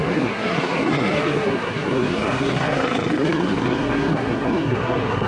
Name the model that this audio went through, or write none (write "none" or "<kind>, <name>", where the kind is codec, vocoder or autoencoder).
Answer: codec, SNAC